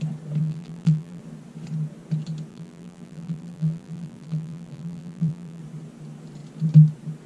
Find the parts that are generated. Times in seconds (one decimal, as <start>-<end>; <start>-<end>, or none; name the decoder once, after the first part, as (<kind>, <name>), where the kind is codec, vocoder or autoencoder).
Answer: 0.4-1.2 (vocoder, BigVGAN v2); 2.5-5.6